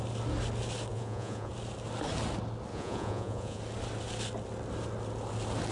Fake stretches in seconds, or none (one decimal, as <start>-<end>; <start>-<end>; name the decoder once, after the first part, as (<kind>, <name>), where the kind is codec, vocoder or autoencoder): 0.9-1.5 (vocoder, Vocos); 2.7-3.6